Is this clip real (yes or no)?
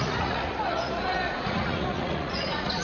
no